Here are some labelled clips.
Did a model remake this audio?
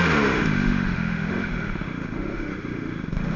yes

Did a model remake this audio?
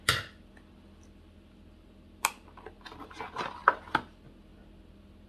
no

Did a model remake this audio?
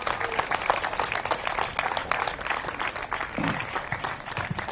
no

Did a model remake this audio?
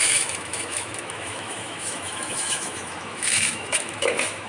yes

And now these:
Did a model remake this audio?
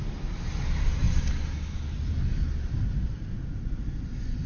no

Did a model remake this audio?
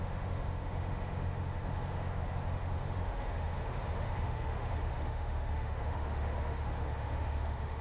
yes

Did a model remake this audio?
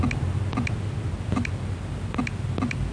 no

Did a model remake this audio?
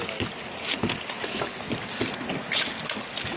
no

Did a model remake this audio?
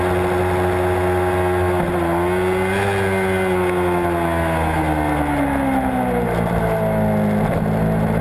no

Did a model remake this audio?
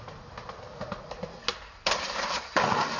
no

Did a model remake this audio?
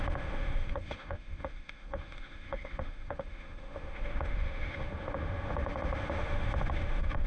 yes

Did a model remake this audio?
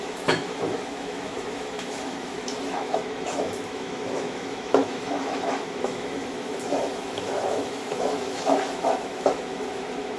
yes